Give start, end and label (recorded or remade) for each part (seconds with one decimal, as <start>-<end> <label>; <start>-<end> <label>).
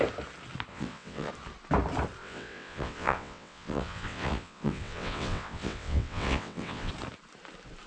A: 0.0-0.7 recorded; 0.7-1.3 remade; 1.3-2.2 recorded; 2.2-6.9 remade; 6.9-7.9 recorded